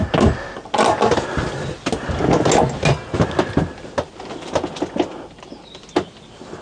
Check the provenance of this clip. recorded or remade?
recorded